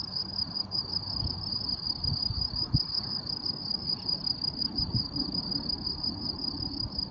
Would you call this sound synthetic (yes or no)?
no